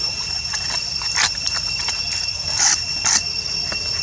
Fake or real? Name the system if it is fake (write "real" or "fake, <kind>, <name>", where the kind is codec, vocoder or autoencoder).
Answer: real